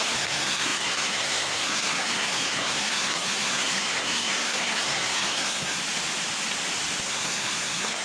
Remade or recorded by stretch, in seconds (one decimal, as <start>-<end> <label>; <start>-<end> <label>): 0.0-5.8 remade; 5.8-7.0 recorded; 7.0-8.0 remade